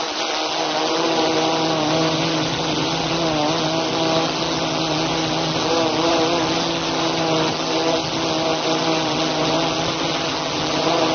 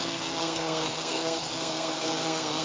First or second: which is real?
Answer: first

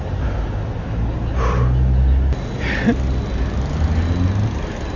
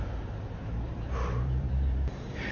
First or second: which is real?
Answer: first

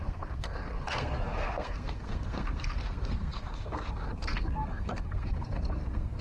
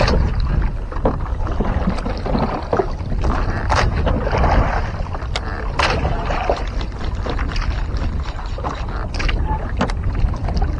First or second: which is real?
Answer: second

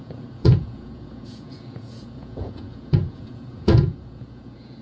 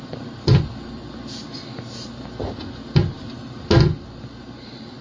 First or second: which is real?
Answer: second